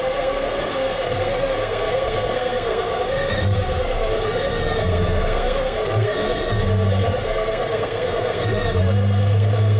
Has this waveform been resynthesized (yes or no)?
yes